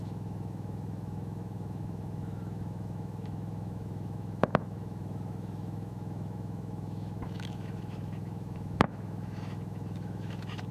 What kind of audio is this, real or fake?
fake